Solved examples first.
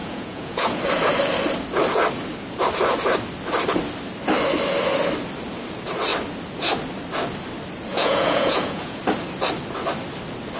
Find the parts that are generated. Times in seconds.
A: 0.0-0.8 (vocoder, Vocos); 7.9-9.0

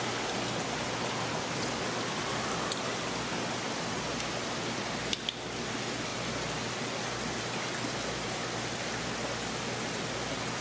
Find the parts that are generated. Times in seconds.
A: none

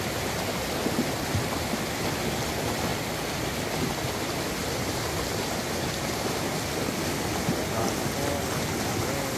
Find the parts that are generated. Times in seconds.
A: 4.6-5.2 (vocoder, BigVGAN v2)

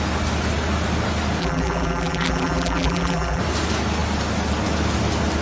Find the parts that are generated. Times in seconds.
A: 1.4-3.4 (vocoder, BigVGAN v2)

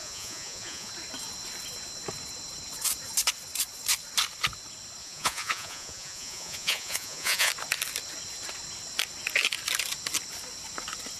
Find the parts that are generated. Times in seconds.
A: 0.0-0.9 (vocoder, Vocos); 5.0-7.5

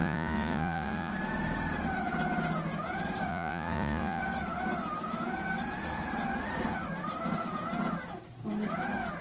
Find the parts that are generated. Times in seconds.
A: 0.0-1.1 (vocoder, Vocos); 3.3-4.2

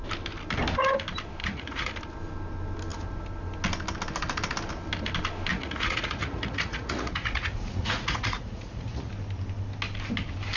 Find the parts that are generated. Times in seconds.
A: 1.4-1.9 (vocoder, Vocos); 5.5-9.1